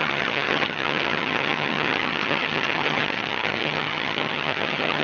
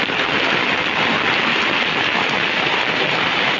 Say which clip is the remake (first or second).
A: first